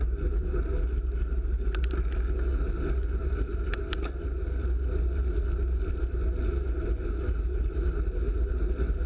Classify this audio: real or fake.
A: real